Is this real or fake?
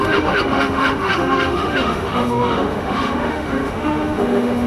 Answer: fake